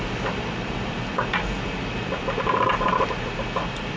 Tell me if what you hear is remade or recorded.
recorded